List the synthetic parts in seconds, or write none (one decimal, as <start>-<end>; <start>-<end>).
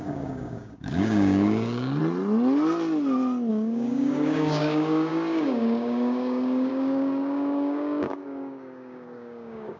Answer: 0.0-2.0; 3.5-9.8